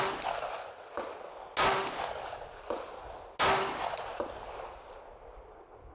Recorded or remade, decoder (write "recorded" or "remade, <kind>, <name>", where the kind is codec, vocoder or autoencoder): recorded